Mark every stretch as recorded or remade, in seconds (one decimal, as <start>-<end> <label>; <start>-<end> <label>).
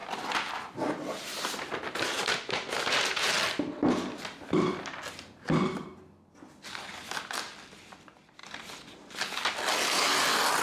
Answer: 0.0-10.6 recorded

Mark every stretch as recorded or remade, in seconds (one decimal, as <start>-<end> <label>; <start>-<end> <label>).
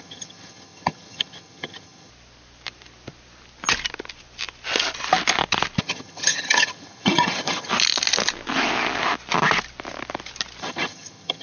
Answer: 0.0-2.1 remade; 2.1-5.8 recorded; 5.8-7.7 remade; 7.7-10.6 recorded; 10.6-11.4 remade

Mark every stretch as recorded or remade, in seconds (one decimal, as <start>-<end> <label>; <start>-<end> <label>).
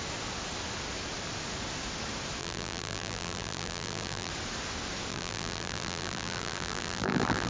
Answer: 0.0-2.4 recorded; 2.4-4.3 remade; 4.3-5.1 recorded; 5.1-7.5 remade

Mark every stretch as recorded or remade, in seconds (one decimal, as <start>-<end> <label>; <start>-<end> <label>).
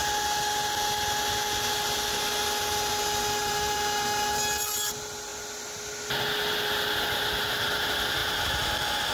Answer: 0.0-3.4 recorded; 3.4-4.3 remade; 4.3-9.1 recorded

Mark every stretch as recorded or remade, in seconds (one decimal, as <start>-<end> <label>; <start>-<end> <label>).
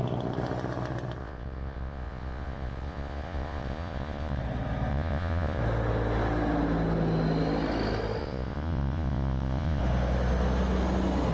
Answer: 0.0-1.2 recorded; 1.2-4.4 remade; 4.4-4.9 recorded; 4.9-5.6 remade; 5.6-8.2 recorded; 8.2-9.8 remade; 9.8-11.3 recorded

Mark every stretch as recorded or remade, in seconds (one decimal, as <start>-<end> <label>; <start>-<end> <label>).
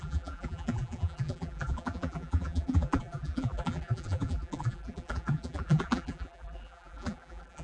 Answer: 0.0-7.6 remade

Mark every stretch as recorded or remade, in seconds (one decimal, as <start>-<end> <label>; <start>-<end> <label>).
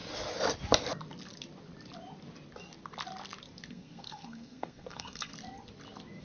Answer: 0.0-3.7 recorded; 3.7-5.3 remade; 5.3-6.2 recorded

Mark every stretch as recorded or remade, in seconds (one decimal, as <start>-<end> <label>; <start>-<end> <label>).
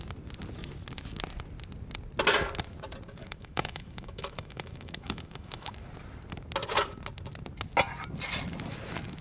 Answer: 0.0-3.2 recorded; 3.2-5.7 remade; 5.7-9.2 recorded